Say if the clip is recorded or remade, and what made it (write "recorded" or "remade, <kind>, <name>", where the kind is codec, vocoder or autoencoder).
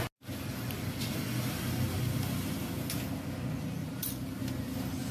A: recorded